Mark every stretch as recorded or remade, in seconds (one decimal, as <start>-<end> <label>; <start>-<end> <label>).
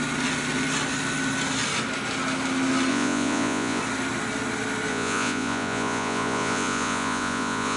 0.0-2.9 recorded; 2.9-3.8 remade; 3.8-4.9 recorded; 4.9-7.8 remade